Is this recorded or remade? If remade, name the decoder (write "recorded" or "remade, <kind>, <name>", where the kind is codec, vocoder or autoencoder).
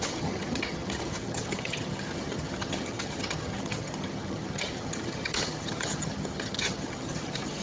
remade, vocoder, HiFi-GAN